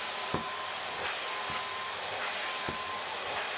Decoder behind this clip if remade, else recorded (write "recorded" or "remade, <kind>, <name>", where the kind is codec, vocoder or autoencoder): recorded